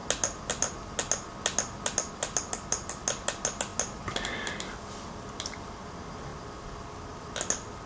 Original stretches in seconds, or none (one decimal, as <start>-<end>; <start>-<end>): 0.0-7.9